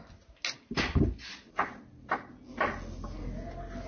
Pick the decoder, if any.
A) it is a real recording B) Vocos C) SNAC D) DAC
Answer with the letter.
A